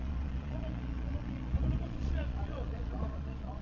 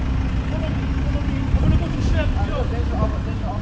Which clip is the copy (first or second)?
first